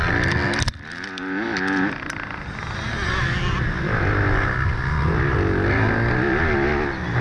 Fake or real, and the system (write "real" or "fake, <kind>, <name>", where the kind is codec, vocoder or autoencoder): real